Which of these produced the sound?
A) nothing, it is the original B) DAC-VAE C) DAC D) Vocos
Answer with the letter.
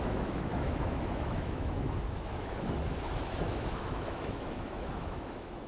B